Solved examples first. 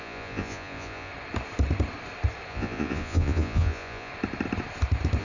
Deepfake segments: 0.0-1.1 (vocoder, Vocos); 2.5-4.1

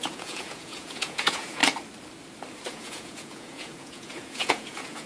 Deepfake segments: 0.0-1.6 (vocoder, Vocos); 2.7-5.1

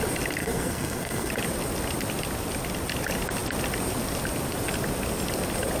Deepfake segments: 0.4-1.3 (codec, SNAC)